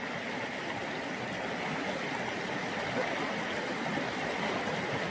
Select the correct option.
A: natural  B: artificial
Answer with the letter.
A